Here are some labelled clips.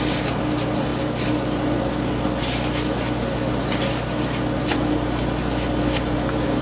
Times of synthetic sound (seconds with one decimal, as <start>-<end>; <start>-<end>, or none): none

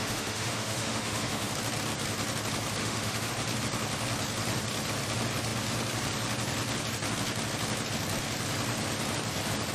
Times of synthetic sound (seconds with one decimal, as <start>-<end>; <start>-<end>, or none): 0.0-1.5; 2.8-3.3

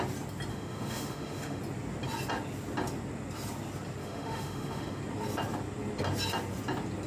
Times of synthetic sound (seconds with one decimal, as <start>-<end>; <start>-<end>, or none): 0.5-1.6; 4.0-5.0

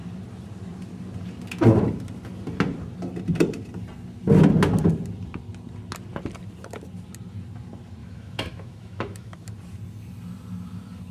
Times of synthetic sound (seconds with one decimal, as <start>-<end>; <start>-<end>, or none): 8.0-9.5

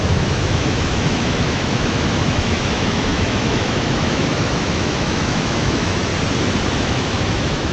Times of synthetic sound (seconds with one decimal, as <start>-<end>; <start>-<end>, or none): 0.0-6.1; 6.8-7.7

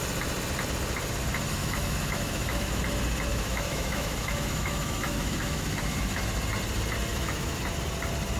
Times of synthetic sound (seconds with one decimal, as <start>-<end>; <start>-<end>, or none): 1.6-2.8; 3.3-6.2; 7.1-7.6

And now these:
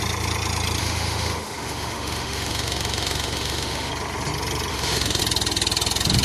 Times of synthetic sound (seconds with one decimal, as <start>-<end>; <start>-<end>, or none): 0.8-3.9; 4.7-5.2

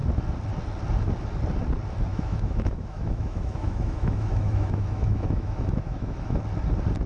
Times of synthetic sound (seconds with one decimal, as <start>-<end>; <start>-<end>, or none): 2.1-6.4